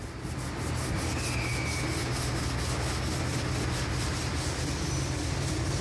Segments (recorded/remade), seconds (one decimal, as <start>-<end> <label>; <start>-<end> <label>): 0.0-5.8 recorded